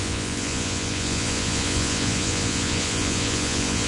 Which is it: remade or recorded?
remade